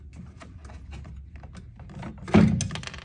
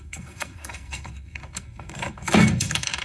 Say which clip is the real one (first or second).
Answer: first